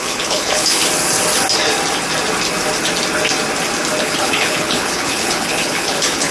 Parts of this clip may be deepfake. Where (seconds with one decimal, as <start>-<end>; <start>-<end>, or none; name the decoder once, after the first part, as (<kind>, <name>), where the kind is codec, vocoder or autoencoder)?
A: 0.0-0.8 (codec, HILCodec); 4.0-6.3